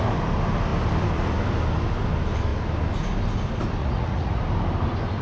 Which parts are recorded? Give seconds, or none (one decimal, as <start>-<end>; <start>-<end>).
0.0-3.8; 4.4-5.2